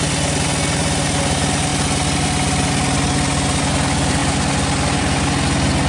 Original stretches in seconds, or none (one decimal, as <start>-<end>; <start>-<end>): 0.0-5.9